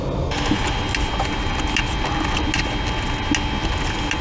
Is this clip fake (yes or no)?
no